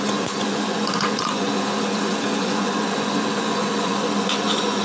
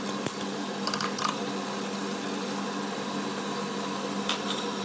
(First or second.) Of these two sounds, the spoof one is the first